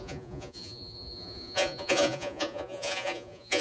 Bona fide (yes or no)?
no